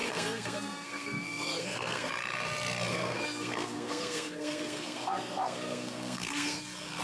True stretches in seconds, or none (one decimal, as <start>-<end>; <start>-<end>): 2.1-2.9